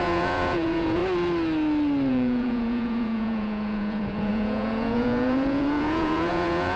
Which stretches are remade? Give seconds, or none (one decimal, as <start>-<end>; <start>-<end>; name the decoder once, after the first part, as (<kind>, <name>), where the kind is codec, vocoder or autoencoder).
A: 0.0-1.0 (vocoder, Vocos); 2.1-6.8